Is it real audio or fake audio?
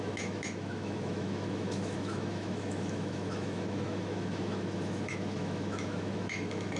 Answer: fake